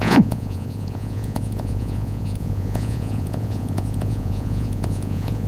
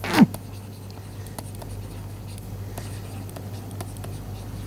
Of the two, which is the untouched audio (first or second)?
second